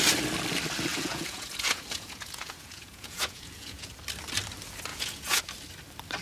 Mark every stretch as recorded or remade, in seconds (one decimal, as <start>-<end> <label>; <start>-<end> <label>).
0.0-0.9 recorded; 0.9-3.9 remade; 3.9-4.9 recorded; 4.9-5.4 remade; 5.4-6.2 recorded